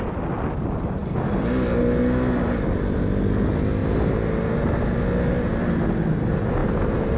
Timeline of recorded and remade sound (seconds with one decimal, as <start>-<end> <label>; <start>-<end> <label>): 0.0-7.2 recorded